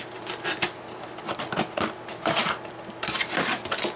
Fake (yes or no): no